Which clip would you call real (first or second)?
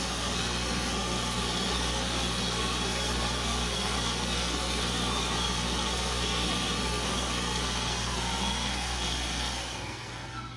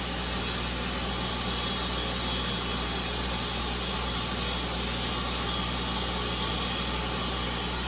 second